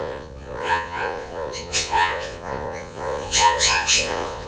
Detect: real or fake fake